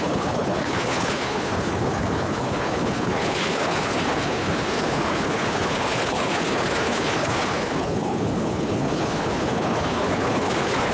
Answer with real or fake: fake